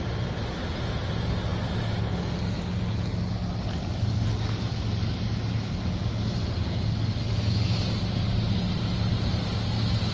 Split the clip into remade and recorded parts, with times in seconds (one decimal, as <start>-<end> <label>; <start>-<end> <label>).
0.0-10.1 recorded

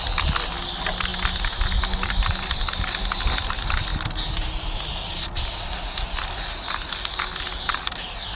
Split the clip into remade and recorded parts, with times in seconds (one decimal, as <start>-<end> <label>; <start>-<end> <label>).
0.0-8.4 recorded

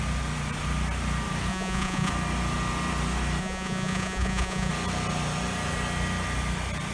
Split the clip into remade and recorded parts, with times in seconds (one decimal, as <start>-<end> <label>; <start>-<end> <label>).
0.0-1.5 recorded; 1.5-2.1 remade; 2.1-3.4 recorded; 3.4-4.7 remade; 4.7-6.9 recorded

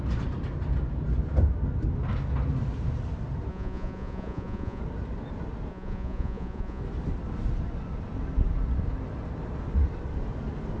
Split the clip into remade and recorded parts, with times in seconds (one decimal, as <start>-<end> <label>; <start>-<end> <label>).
0.0-3.5 recorded; 3.5-4.8 remade; 4.8-5.7 recorded; 5.7-6.8 remade; 6.8-10.8 recorded

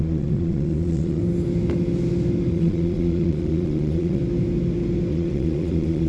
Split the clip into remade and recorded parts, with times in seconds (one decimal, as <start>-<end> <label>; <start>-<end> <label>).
0.0-1.2 remade; 1.2-2.5 recorded; 2.5-4.2 remade; 4.2-5.1 recorded; 5.1-6.1 remade